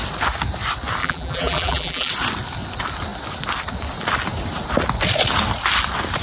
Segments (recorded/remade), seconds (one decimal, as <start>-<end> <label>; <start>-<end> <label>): 0.0-1.0 recorded; 1.0-2.1 remade; 2.1-6.2 recorded